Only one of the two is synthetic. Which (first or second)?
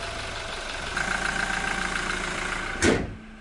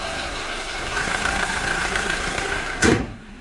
second